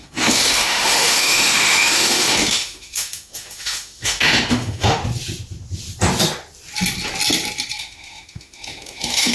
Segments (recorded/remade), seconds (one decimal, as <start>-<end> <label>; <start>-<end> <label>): 0.0-5.0 remade; 5.0-7.8 recorded; 7.8-9.3 remade